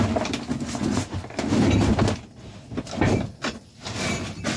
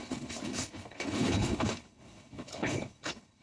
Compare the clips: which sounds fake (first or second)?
second